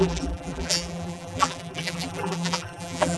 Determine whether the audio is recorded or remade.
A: remade